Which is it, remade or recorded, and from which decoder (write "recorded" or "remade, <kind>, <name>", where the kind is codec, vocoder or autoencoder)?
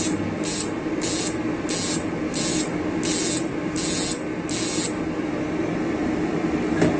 recorded